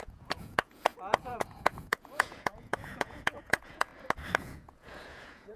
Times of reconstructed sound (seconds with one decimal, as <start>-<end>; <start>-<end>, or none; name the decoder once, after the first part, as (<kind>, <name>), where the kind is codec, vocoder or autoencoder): 0.0-3.9 (vocoder, Vocos); 4.4-5.6